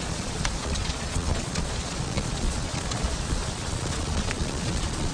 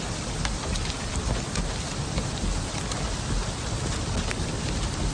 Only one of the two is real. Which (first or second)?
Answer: second